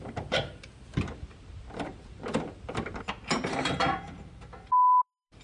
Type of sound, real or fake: fake